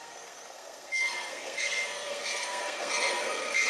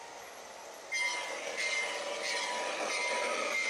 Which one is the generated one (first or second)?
first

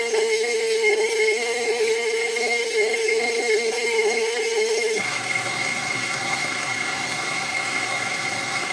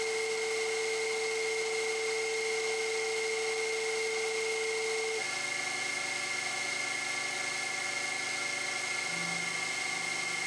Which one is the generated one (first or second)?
first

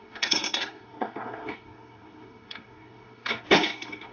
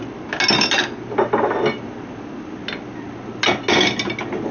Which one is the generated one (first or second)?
first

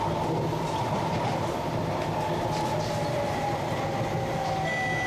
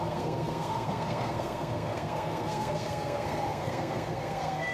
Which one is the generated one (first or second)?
second